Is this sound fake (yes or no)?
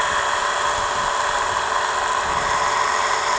no